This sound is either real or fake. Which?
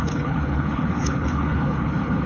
fake